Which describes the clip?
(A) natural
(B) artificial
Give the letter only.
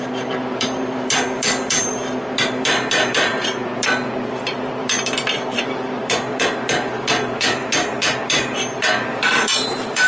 B